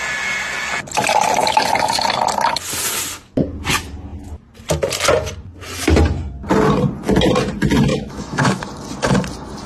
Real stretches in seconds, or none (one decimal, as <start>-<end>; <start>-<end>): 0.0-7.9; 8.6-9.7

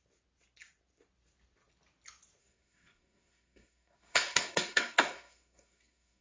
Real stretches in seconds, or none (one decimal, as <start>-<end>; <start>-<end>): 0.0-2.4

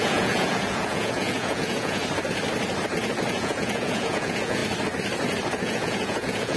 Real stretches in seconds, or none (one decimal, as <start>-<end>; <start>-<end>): 2.0-3.3; 4.6-5.6